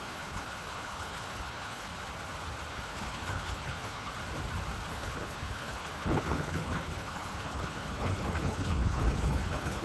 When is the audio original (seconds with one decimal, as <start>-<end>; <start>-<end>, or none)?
1.9-2.7; 4.1-4.9